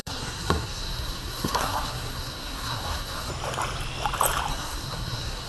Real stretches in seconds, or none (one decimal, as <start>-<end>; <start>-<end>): 3.3-4.5